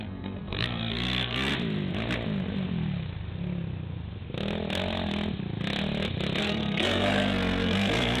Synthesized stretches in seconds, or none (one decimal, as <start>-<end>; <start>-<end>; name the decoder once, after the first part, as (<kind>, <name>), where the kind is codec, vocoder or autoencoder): 0.0-1.5 (codec, SNAC); 6.4-8.2

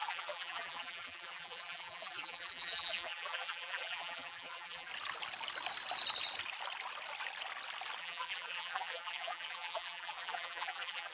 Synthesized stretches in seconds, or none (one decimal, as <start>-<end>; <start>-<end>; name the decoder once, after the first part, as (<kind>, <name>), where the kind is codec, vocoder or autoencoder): 0.0-4.9 (vocoder, BigVGAN v2); 8.0-11.1

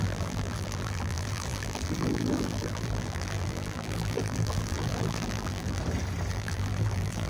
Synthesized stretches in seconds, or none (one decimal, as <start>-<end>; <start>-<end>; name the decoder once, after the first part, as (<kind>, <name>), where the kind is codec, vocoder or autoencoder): 0.0-5.8 (vocoder, BigVGAN v2); 6.3-7.3